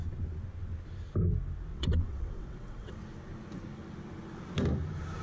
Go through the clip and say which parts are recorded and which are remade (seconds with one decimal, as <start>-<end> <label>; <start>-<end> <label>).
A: 0.0-1.7 recorded; 1.7-3.0 remade; 3.0-5.2 recorded